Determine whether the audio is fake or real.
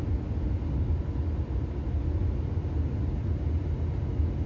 real